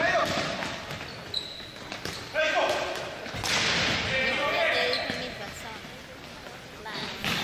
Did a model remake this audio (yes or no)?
no